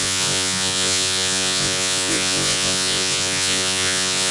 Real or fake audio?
fake